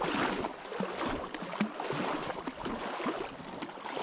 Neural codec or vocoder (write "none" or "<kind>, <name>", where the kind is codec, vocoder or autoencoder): none